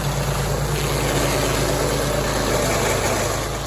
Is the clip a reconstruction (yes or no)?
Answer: no